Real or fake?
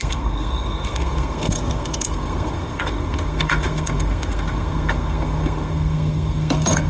fake